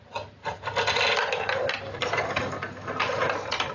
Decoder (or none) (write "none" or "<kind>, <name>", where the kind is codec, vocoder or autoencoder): none